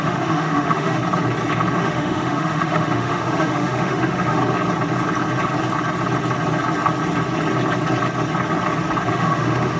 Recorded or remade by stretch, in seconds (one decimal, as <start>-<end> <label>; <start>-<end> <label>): 0.0-1.0 remade; 1.0-1.8 recorded; 1.8-4.4 remade; 4.4-9.1 recorded; 9.1-9.8 remade